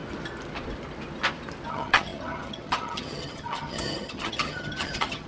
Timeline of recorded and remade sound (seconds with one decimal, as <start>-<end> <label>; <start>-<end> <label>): 0.0-1.7 recorded; 1.7-5.3 remade